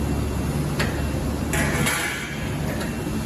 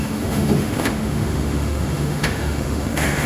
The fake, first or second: second